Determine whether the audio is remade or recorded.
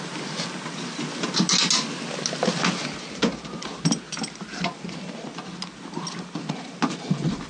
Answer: recorded